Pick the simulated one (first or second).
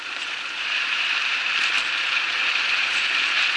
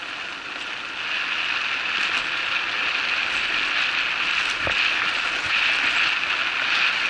first